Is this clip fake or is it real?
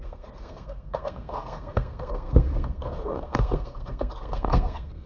fake